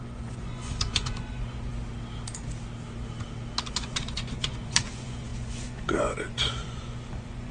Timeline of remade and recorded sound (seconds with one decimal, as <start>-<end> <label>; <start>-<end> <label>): 0.0-1.7 remade; 1.7-3.7 recorded; 3.7-7.5 remade